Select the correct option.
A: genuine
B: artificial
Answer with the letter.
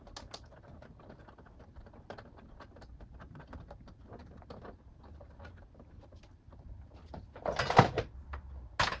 A